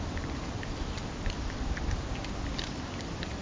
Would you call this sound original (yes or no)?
yes